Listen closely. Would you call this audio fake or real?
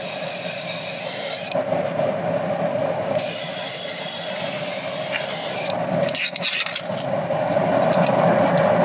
real